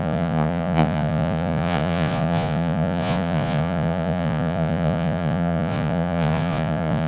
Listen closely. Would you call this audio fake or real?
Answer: fake